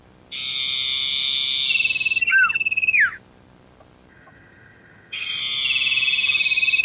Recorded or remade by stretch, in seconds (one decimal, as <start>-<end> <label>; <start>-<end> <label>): 0.0-4.1 recorded; 4.1-5.4 remade; 5.4-6.8 recorded